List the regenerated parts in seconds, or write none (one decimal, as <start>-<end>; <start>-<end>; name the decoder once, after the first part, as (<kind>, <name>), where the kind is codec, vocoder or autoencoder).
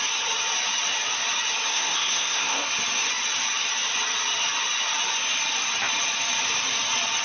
1.7-2.7 (codec, SNAC)